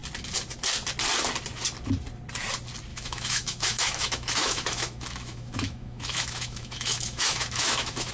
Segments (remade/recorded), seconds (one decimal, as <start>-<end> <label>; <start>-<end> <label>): 0.0-2.9 recorded; 2.9-8.1 remade

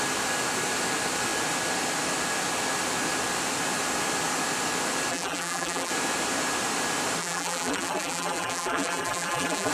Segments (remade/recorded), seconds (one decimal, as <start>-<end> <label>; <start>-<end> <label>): 0.0-5.1 recorded; 5.1-5.9 remade; 5.9-7.2 recorded; 7.2-9.7 remade

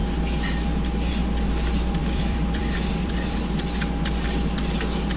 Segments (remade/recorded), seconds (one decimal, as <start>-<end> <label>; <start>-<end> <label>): 0.0-2.0 recorded; 2.0-3.4 remade; 3.4-5.2 recorded

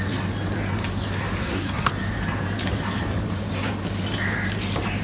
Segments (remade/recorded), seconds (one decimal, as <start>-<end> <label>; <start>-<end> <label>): 0.0-1.4 recorded; 1.4-1.9 remade; 1.9-5.0 recorded

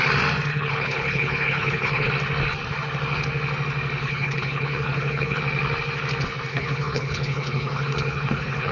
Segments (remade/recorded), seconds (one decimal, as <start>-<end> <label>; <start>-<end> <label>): 0.0-0.5 recorded; 0.5-2.1 remade; 2.1-4.0 recorded; 4.0-5.4 remade; 5.4-6.5 recorded; 6.5-8.7 remade

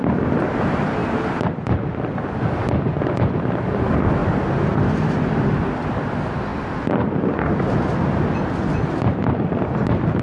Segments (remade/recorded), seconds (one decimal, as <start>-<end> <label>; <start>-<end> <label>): 0.0-10.2 recorded